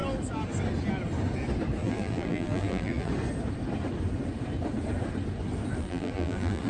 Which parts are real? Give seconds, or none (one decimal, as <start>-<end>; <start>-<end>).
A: 0.0-1.8; 3.1-5.8